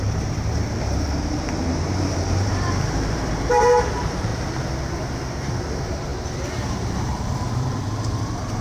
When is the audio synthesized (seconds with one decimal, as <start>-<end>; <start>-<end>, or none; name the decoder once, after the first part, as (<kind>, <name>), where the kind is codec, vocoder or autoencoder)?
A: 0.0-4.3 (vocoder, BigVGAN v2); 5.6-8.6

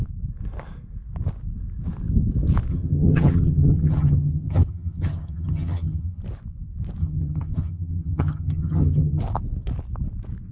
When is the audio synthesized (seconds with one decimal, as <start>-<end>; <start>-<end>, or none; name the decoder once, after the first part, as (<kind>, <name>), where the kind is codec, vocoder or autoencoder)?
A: 2.7-6.2 (vocoder, HiFi-GAN); 7.0-9.2

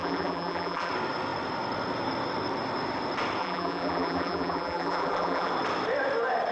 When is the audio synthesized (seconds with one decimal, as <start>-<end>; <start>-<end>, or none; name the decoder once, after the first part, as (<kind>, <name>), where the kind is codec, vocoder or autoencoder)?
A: 0.0-0.9 (vocoder, BigVGAN v2); 3.4-5.5

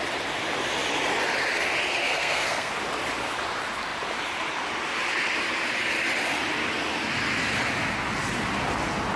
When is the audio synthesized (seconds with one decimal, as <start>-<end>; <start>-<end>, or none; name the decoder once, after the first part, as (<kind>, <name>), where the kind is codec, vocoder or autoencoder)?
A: 2.0-2.7 (codec, SNAC)

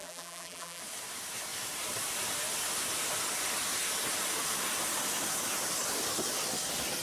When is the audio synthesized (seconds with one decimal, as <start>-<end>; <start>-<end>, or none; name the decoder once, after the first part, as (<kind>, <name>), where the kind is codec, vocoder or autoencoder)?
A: 0.0-0.8 (vocoder, BigVGAN v2)

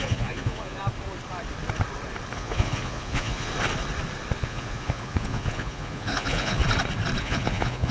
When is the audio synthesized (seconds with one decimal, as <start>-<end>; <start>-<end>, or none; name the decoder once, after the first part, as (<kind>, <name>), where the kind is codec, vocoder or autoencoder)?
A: 0.0-0.8 (vocoder, Vocos); 2.3-3.5; 4.4-6.6; 7.2-7.9

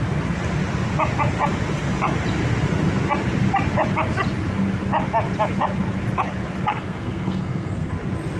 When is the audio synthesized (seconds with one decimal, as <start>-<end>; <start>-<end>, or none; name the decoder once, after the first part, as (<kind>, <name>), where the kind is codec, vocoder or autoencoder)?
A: 6.7-7.9 (codec, SNAC)